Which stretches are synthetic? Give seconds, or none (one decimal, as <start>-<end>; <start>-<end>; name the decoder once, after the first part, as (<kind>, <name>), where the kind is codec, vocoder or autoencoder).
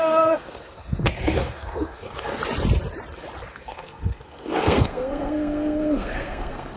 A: 0.0-2.4 (codec, SNAC); 3.5-6.8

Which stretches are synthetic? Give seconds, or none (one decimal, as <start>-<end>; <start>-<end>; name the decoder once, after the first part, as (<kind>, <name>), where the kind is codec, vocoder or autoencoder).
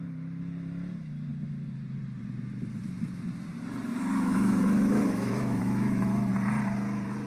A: 3.9-6.3 (autoencoder, DAC-VAE)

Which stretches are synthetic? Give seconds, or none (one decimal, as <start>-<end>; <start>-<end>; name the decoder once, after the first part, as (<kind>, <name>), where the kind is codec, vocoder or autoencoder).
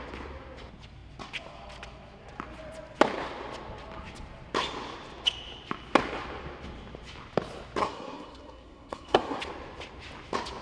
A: 7.8-9.4 (codec, SNAC)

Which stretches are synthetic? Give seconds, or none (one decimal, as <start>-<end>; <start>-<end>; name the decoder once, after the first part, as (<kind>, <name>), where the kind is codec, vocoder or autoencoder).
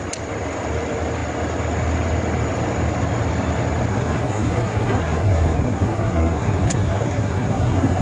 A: 3.9-8.0 (codec, SNAC)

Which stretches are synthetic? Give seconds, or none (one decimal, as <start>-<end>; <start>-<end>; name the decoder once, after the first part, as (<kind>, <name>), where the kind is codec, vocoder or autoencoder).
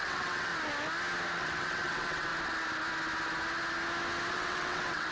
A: 0.0-0.5 (vocoder, WaveNeXt); 1.4-2.3; 4.3-5.1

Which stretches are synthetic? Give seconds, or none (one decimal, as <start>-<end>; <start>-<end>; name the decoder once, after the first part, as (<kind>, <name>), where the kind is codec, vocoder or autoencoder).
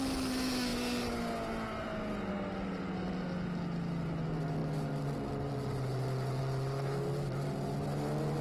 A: none